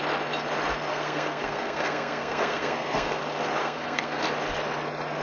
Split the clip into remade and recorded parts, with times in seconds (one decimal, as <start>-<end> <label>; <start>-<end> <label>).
0.0-0.9 recorded; 0.9-3.2 remade; 3.2-3.6 recorded; 3.6-4.2 remade; 4.2-5.2 recorded